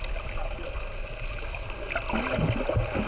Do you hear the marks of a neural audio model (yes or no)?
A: no